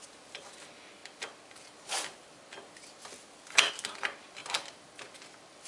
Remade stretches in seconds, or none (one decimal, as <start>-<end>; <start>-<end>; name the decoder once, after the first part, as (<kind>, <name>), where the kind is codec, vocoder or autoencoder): none